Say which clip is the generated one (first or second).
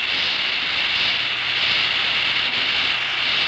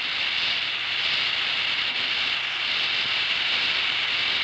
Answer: second